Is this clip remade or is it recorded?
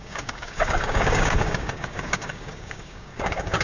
remade